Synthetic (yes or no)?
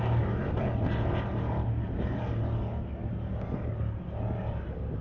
no